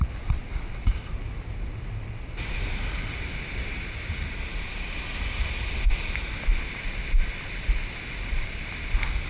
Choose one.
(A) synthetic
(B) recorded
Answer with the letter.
B